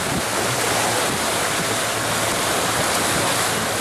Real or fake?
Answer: real